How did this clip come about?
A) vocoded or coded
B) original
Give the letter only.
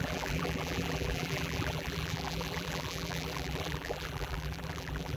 A